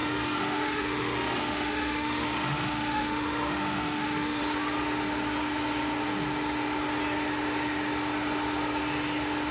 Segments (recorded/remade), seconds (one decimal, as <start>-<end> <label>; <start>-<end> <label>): 0.0-4.4 remade; 4.4-9.5 recorded